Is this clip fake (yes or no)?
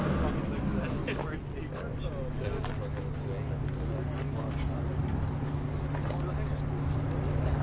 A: no